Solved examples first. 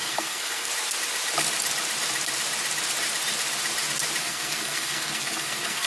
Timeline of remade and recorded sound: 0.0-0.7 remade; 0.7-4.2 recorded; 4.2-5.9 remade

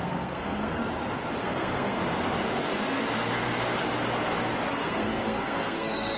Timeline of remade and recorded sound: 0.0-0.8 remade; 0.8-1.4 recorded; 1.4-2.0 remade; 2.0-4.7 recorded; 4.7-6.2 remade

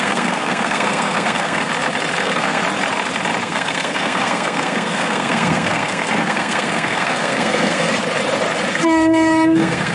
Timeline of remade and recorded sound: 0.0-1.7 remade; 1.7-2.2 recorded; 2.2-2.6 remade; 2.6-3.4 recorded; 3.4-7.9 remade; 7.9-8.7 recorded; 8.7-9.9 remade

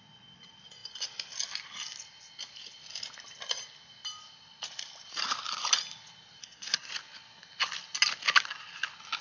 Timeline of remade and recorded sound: 0.0-6.4 recorded; 6.4-6.9 remade; 6.9-9.2 recorded

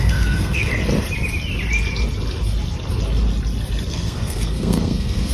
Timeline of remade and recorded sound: 0.0-0.7 remade; 0.7-3.9 recorded; 3.9-5.3 remade